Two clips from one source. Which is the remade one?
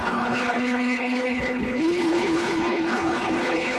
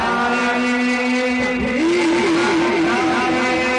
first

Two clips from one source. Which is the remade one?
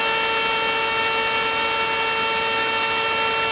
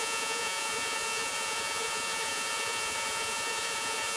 second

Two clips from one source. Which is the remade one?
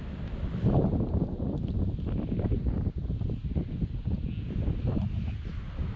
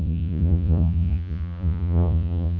second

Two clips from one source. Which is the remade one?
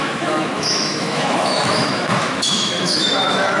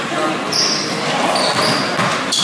first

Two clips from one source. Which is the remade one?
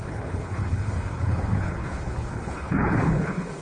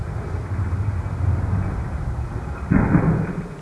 first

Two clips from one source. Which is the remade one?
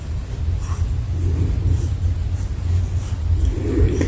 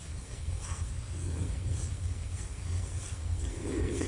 second